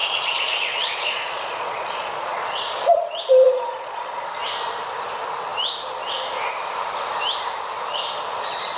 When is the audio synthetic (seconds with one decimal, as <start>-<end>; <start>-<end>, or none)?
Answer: 0.0-4.3